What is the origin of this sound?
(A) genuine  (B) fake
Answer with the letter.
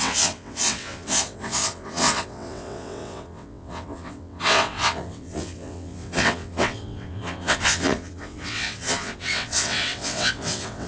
B